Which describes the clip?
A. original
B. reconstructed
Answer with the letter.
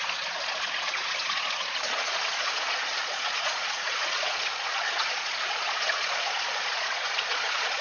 B